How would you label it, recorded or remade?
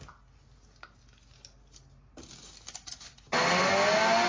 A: recorded